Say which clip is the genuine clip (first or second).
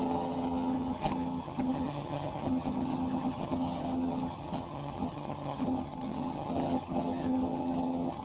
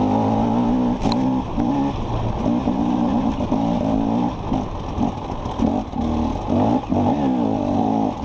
second